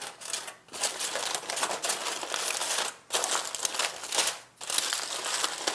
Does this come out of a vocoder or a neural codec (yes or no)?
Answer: no